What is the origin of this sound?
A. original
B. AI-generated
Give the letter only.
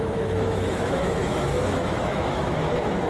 B